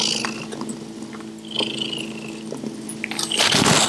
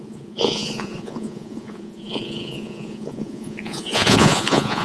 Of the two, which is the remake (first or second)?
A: second